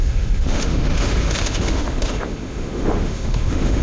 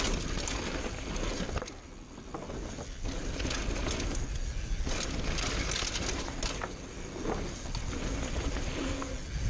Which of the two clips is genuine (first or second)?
second